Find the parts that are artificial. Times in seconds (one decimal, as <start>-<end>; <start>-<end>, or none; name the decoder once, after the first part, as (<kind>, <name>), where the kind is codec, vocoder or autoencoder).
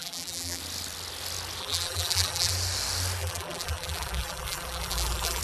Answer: 0.0-0.6 (vocoder, BigVGAN v2); 1.6-2.5; 3.2-5.4